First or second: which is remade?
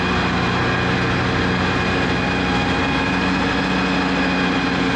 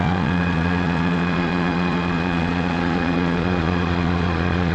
second